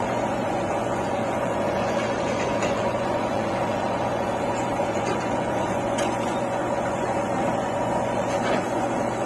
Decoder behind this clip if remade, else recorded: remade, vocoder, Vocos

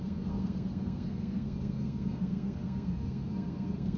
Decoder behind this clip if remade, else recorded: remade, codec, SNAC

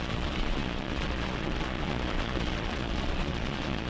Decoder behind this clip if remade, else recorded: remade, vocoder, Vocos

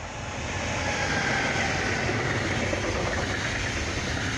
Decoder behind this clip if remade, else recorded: recorded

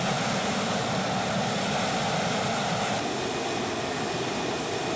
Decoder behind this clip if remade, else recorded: recorded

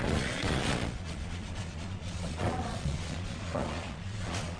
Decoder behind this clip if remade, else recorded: remade, vocoder, Vocos